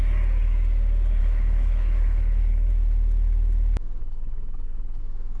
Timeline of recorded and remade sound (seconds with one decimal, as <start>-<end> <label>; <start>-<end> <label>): 0.0-1.2 recorded; 1.2-2.7 remade; 2.7-4.0 recorded; 4.0-5.0 remade; 5.0-5.4 recorded